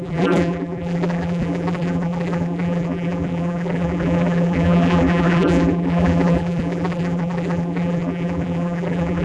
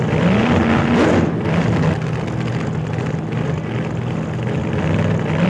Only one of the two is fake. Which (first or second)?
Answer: first